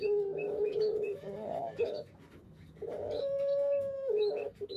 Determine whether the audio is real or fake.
fake